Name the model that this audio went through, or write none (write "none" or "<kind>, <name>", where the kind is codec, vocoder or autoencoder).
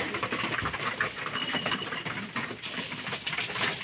none